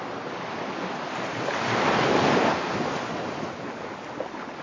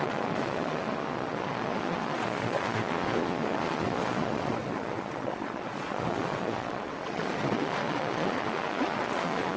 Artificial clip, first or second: second